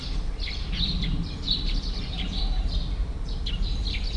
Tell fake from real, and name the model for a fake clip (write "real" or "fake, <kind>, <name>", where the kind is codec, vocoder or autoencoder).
real